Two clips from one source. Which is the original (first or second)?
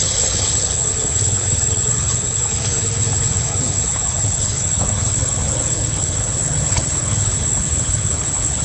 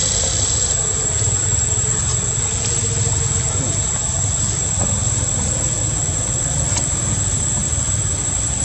second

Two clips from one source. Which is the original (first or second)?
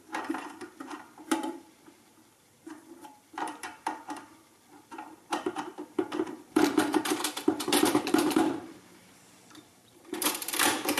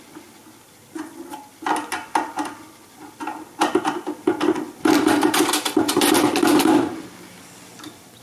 second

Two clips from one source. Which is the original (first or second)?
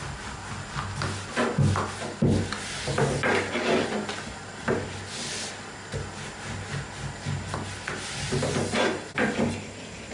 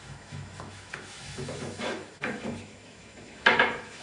first